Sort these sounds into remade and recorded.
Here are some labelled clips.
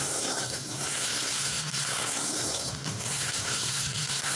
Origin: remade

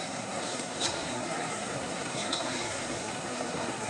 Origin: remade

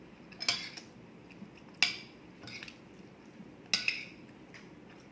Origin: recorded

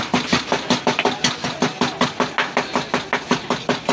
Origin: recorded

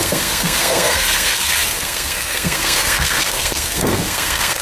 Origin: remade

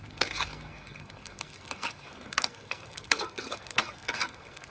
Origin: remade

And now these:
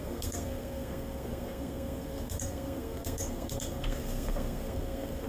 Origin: remade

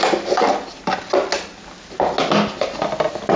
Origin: recorded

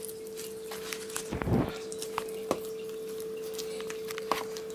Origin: recorded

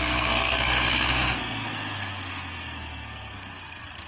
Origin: remade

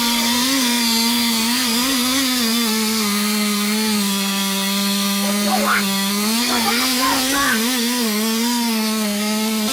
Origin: remade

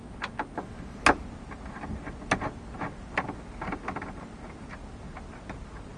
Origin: recorded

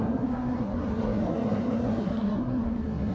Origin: remade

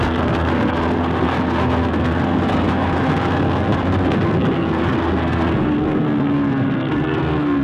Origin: remade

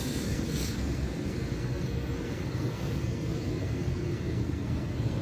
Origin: remade